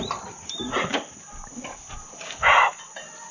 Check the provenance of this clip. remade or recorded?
recorded